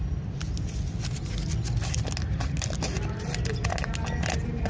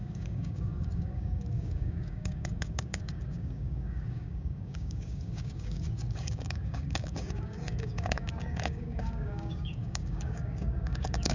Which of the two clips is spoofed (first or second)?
second